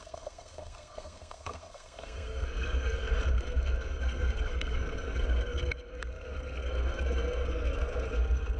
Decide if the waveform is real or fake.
fake